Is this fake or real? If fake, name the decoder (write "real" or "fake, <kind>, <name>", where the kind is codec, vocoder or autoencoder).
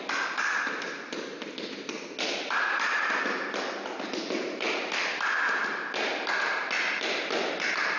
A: real